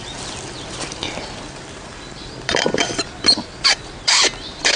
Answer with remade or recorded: remade